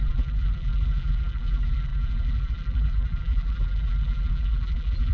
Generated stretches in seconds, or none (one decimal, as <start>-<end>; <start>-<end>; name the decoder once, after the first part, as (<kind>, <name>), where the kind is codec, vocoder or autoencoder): 0.0-5.1 (vocoder, BigVGAN v2)